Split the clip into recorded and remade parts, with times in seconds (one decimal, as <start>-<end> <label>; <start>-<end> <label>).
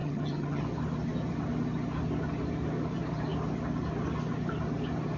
0.0-0.6 remade; 0.6-5.2 recorded